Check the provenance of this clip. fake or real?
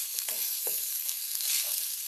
fake